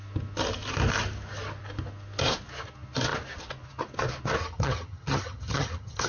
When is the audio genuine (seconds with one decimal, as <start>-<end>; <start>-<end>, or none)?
0.0-4.4